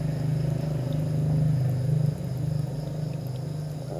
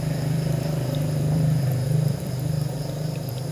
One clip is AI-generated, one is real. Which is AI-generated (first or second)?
second